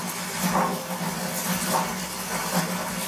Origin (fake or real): real